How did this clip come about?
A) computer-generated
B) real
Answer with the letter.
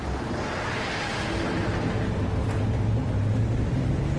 B